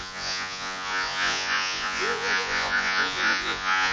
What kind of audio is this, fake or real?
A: fake